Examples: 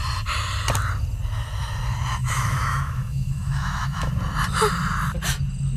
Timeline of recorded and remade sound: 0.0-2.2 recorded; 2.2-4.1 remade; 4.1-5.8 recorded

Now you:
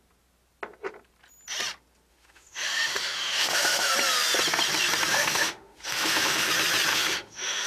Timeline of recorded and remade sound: 0.0-2.1 recorded; 2.1-3.9 remade; 3.9-5.1 recorded; 5.1-6.5 remade; 6.5-6.9 recorded; 6.9-7.7 remade

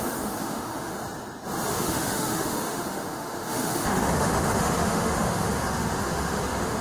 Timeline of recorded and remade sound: 0.0-1.0 remade; 1.0-1.7 recorded; 1.7-6.8 remade

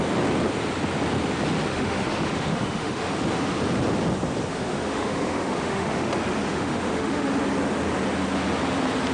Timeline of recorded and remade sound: 0.0-1.7 recorded; 1.7-3.1 remade; 3.1-4.5 recorded; 4.5-6.1 remade; 6.1-6.5 recorded; 6.5-7.3 remade; 7.3-9.1 recorded

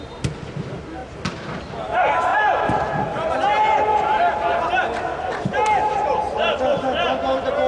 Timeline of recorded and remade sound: 0.0-7.7 recorded